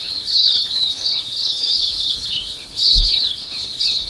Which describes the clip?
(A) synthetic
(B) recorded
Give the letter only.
A